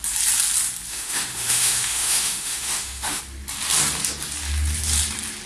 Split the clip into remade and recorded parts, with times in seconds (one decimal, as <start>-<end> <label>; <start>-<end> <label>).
0.0-0.9 recorded; 0.9-3.2 remade; 3.2-5.5 recorded